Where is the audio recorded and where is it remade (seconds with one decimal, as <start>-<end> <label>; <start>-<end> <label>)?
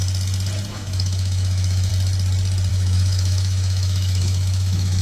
0.0-0.7 recorded; 0.7-1.9 remade; 1.9-2.7 recorded; 2.7-5.0 remade